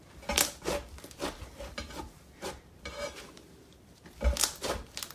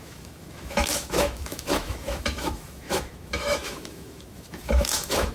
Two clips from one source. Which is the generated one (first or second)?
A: second